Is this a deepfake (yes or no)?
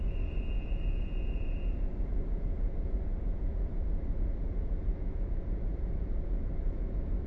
yes